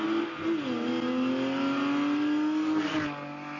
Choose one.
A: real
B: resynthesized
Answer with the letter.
A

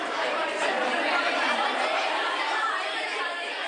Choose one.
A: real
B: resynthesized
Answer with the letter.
B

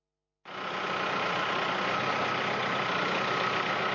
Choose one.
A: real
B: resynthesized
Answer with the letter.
A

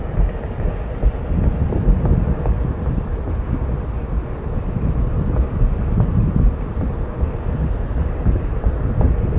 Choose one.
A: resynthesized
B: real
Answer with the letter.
B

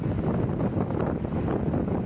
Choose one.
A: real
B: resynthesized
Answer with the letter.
A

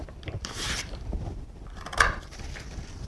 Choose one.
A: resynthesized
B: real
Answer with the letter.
A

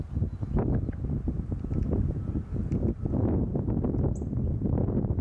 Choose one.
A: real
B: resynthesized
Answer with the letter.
A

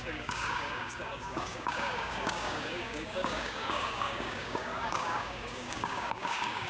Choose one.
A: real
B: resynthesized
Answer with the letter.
B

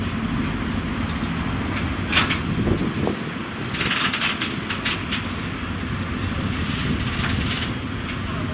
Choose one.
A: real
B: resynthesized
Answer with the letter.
A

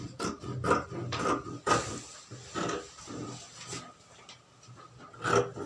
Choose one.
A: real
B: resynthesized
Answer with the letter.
A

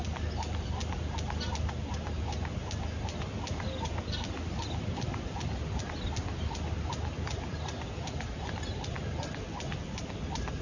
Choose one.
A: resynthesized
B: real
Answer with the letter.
B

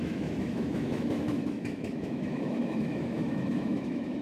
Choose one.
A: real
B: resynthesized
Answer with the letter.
B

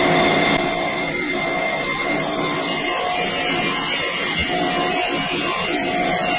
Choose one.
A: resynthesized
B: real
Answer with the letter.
B